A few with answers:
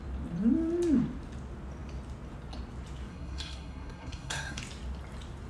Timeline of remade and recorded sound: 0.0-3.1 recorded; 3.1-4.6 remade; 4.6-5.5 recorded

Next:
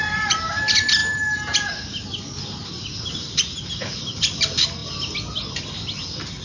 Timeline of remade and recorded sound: 0.0-6.4 recorded

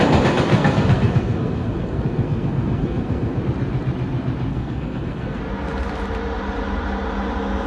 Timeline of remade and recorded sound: 0.0-0.5 recorded; 0.5-3.4 remade; 3.4-4.5 recorded; 4.5-5.4 remade; 5.4-7.7 recorded

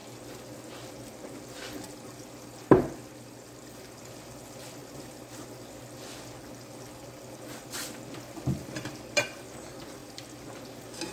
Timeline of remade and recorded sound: 0.0-11.1 recorded

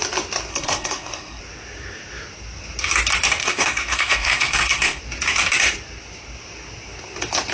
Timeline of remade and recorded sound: 0.0-0.5 recorded; 0.5-1.4 remade; 1.4-3.4 recorded; 3.4-5.0 remade; 5.0-7.5 recorded